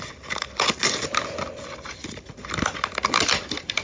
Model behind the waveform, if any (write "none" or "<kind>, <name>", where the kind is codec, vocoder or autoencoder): none